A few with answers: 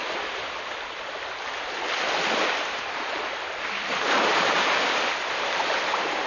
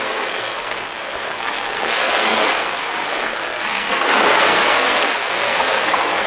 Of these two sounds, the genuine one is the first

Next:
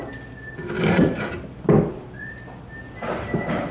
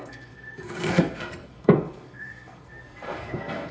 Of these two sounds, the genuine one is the first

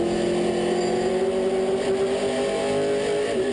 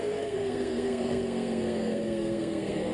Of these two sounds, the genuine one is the first